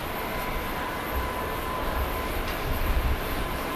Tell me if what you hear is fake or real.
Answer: fake